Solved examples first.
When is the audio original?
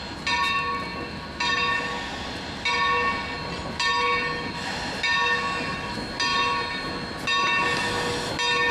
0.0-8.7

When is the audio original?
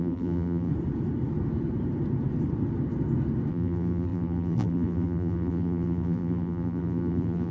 0.7-3.5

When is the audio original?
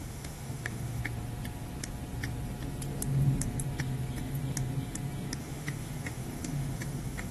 1.0-5.4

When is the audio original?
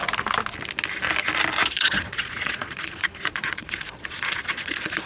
0.0-1.6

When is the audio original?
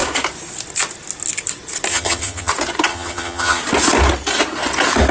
0.0-1.9; 2.5-2.9; 3.6-5.1